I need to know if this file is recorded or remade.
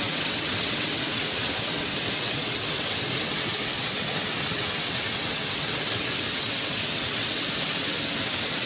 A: remade